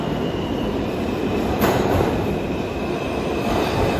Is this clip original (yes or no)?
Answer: no